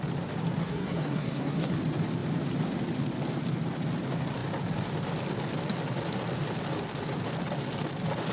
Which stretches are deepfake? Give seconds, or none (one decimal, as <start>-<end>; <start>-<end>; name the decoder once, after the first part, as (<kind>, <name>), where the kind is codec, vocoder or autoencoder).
0.6-1.7 (codec, SNAC)